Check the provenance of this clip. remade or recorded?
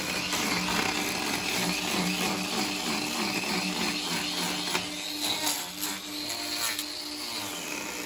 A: recorded